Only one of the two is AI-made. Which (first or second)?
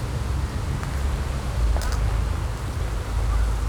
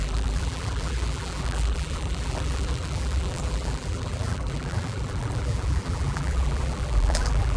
second